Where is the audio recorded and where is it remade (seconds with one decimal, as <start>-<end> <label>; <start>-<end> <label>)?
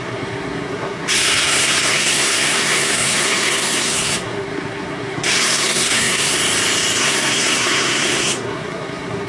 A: 0.0-6.4 remade; 6.4-7.0 recorded; 7.0-9.3 remade